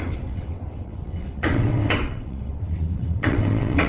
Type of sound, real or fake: fake